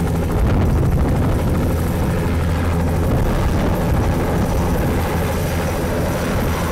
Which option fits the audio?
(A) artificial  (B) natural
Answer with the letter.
B